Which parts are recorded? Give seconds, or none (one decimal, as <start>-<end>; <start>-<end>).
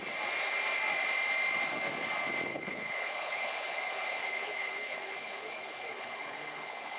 0.0-2.5